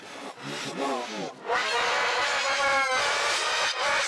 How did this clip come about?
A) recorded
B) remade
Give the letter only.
A